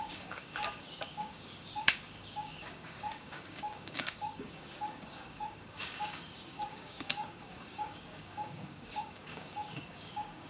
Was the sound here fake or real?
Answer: fake